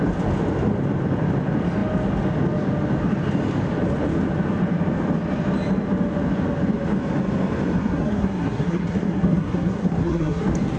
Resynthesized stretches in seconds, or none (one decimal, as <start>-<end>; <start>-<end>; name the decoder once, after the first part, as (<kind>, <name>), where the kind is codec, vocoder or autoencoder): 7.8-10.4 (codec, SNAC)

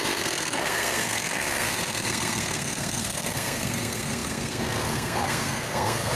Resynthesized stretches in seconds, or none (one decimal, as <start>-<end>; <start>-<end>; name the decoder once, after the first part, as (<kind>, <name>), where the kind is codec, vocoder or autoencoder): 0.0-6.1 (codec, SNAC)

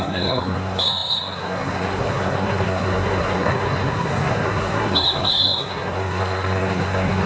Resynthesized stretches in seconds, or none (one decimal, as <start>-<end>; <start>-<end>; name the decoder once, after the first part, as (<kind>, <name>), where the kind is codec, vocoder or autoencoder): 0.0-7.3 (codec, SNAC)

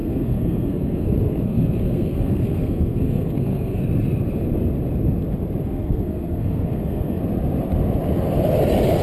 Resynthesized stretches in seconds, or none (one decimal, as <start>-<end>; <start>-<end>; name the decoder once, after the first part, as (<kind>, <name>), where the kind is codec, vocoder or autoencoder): 0.0-3.8 (codec, SNAC); 5.6-7.2

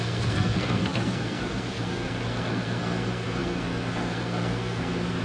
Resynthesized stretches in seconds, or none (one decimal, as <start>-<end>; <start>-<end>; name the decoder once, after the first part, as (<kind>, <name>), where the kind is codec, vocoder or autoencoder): 0.0-5.2 (codec, SNAC)